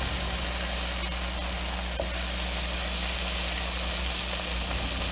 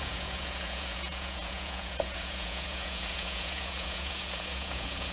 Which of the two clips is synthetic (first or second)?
second